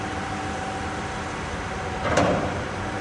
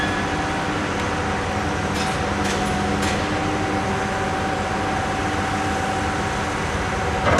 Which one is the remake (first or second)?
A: first